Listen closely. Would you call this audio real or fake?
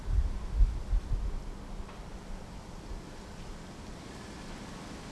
real